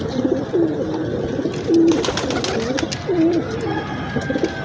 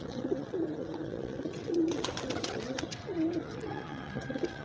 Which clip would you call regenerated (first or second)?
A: second